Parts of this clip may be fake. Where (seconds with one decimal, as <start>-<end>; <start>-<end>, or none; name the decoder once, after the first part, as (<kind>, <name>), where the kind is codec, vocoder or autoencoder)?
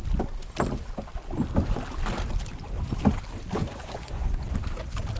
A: 3.6-4.5 (vocoder, Vocos)